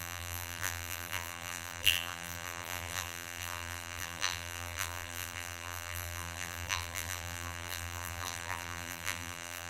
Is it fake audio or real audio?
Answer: fake